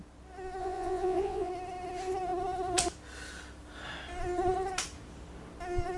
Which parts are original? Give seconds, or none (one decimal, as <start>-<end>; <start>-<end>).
0.0-0.6; 1.5-6.0